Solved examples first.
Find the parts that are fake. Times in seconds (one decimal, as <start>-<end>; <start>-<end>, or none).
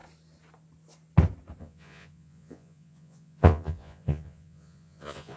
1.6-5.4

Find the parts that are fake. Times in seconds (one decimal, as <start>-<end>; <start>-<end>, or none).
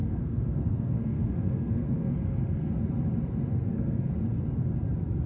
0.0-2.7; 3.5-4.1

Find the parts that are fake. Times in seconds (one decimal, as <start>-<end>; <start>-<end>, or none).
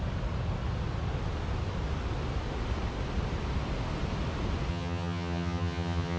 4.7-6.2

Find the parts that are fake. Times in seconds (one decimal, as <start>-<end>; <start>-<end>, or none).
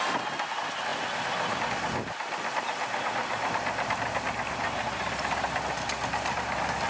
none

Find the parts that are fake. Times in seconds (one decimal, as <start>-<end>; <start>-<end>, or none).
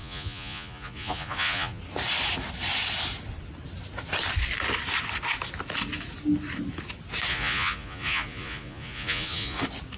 0.0-1.8; 7.3-9.6